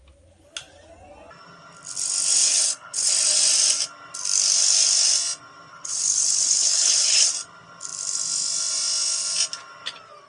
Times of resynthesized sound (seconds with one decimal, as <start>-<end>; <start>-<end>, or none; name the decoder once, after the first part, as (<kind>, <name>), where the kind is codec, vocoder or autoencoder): 2.4-3.1 (codec, HILCodec); 5.7-7.3